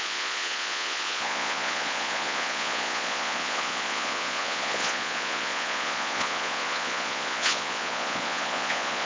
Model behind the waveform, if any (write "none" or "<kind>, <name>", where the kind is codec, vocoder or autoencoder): vocoder, Vocos